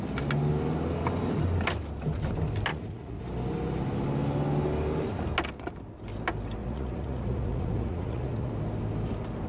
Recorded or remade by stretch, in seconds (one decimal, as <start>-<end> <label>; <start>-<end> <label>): 0.0-2.7 recorded; 2.7-3.2 remade; 3.2-6.6 recorded; 6.6-8.5 remade; 8.5-9.5 recorded